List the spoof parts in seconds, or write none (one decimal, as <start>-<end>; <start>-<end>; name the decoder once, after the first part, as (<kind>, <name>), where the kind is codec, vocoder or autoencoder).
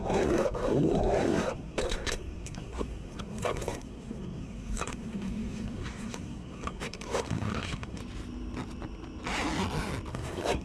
0.0-8.0 (codec, SNAC); 10.1-10.6